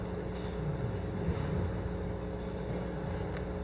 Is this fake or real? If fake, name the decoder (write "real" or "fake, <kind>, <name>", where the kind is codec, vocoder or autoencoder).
real